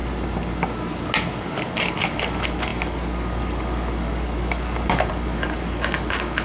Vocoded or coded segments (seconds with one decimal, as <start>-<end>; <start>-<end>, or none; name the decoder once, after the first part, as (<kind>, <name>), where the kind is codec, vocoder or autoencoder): 1.4-6.4 (codec, DAC)